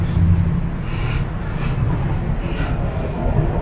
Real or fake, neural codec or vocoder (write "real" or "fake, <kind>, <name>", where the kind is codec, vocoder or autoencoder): real